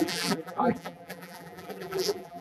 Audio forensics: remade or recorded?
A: remade